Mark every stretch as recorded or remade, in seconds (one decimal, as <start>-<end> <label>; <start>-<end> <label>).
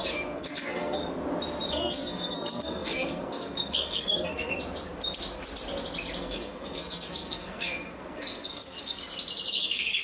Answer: 0.0-1.0 remade; 1.0-1.7 recorded; 1.7-4.5 remade; 4.5-6.2 recorded; 6.2-9.0 remade; 9.0-9.5 recorded; 9.5-10.0 remade